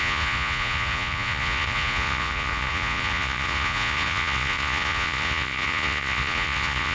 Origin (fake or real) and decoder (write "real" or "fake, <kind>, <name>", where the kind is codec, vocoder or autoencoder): fake, vocoder, Vocos